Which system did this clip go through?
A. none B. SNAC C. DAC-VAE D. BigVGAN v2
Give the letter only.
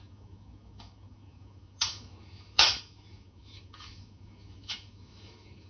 C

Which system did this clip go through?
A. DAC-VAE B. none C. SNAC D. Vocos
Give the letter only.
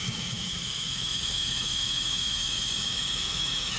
A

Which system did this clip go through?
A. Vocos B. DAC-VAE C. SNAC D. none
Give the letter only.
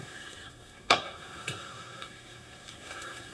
C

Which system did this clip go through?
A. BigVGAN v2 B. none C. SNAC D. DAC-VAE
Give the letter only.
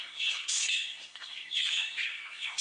C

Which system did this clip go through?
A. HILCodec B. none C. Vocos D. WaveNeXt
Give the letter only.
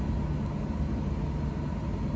B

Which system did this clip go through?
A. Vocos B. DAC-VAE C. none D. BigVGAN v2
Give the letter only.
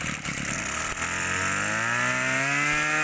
D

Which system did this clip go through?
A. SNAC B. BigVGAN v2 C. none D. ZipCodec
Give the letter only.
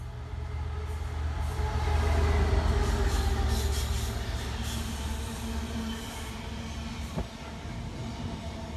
C